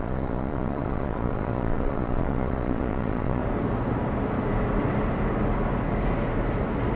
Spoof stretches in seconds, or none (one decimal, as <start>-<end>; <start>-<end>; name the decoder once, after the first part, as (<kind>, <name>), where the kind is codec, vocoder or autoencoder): 0.0-3.4 (vocoder, Vocos)